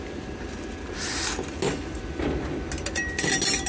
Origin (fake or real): real